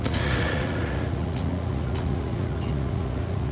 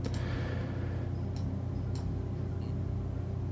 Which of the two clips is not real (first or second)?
first